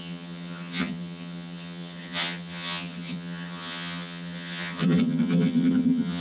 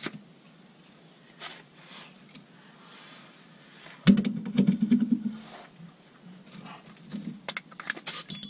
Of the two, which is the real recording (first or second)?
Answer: second